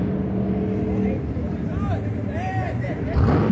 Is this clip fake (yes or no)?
no